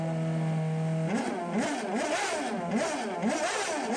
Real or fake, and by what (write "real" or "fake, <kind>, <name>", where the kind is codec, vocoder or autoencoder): real